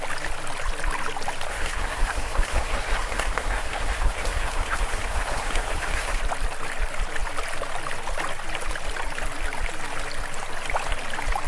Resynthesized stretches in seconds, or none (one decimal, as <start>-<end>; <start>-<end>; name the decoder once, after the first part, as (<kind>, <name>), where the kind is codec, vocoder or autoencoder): 1.5-6.2 (codec, SNAC)